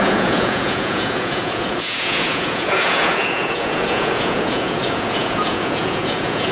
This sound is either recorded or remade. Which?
remade